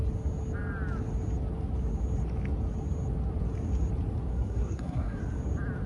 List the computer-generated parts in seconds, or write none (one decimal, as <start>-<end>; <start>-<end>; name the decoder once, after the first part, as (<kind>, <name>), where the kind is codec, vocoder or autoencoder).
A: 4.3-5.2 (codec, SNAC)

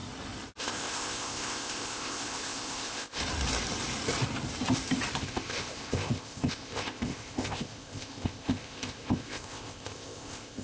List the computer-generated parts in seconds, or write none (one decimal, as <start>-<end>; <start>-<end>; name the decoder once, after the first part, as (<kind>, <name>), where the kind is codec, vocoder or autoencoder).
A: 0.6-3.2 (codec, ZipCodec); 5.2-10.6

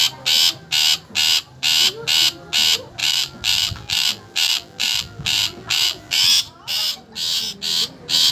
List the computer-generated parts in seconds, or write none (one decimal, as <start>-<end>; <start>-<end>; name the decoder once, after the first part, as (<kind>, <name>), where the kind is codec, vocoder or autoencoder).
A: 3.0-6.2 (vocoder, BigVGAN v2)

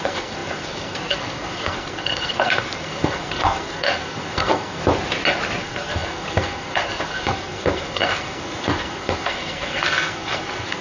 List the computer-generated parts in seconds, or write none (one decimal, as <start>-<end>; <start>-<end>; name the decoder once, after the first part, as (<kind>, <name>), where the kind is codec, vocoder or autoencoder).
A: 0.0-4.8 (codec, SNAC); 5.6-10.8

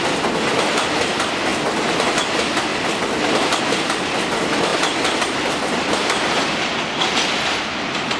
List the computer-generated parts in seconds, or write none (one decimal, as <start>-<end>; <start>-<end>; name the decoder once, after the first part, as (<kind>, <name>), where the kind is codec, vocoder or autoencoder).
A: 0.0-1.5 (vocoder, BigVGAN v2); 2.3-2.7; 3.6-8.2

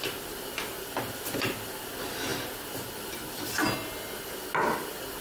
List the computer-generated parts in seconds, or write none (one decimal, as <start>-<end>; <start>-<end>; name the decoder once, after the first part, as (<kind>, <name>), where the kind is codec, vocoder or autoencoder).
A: none

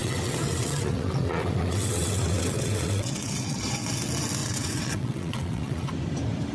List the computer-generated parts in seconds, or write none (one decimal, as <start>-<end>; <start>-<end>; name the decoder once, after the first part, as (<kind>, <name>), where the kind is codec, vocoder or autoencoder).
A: 0.0-3.9 (vocoder, WaveNeXt); 4.4-5.9